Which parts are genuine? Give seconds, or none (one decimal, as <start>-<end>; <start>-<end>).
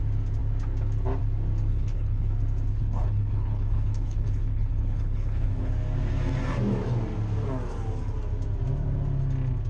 0.0-1.7; 2.3-2.7; 5.7-9.7